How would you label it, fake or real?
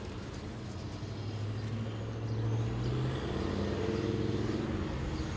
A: real